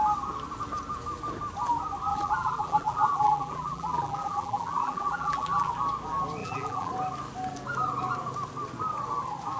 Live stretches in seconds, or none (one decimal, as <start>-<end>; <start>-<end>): 0.0-2.1; 5.7-6.4; 6.9-9.6